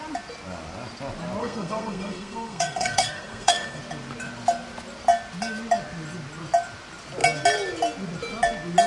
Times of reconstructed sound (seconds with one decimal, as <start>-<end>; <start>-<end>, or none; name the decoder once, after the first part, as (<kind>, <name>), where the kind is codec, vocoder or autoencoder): 1.4-3.8 (codec, SNAC)